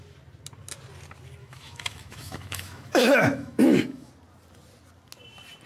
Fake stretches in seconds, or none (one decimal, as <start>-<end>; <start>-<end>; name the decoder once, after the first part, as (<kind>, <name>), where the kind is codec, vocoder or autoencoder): 1.4-4.1 (autoencoder, DAC-VAE)